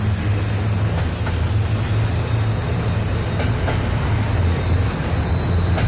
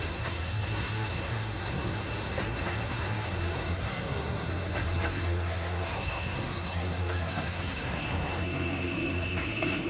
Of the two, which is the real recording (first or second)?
first